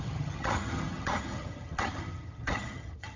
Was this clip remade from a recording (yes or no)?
yes